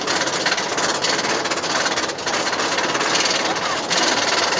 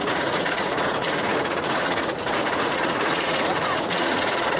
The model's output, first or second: second